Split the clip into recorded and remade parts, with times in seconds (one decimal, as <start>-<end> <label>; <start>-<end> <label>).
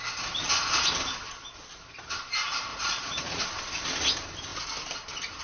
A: 0.0-2.7 recorded; 2.7-3.4 remade; 3.4-5.4 recorded